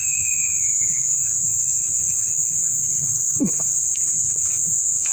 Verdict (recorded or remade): remade